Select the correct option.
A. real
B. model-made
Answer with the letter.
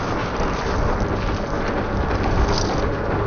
A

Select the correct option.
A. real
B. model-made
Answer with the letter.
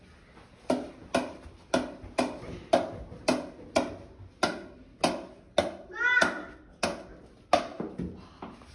A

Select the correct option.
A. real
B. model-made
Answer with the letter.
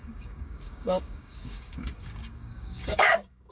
B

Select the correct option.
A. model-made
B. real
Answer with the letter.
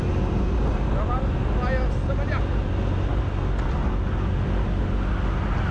B